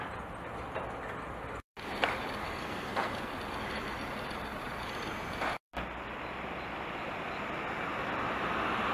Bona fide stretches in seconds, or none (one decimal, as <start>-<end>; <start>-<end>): 0.0-2.4; 3.3-8.9